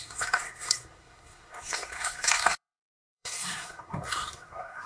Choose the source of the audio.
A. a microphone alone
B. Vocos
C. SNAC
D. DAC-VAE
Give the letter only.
C